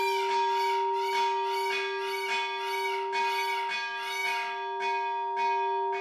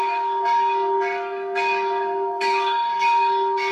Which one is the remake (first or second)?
second